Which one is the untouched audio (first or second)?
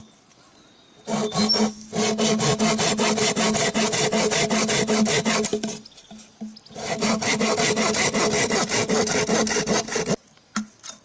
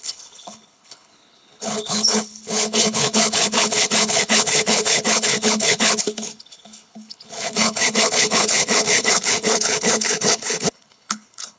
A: first